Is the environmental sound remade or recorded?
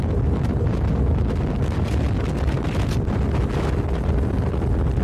recorded